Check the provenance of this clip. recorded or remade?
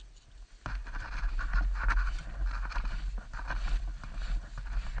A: recorded